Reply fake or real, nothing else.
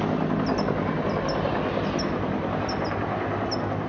real